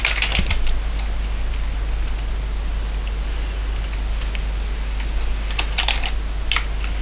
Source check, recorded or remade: recorded